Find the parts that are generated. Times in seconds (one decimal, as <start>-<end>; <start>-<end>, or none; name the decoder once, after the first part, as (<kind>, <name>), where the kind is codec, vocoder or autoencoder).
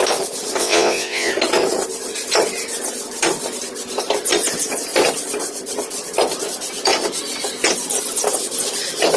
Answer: 0.6-1.3 (vocoder, Vocos)